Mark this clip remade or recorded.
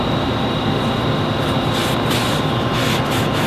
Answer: recorded